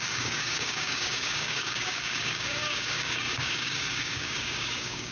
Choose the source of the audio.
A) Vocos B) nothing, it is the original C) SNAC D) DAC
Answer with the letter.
D